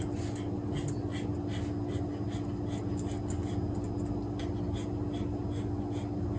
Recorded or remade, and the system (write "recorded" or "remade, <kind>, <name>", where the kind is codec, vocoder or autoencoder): recorded